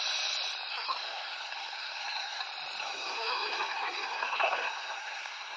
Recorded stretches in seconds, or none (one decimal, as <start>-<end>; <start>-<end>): 0.0-0.7; 2.4-2.8